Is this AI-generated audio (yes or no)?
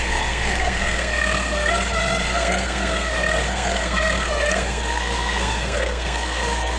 yes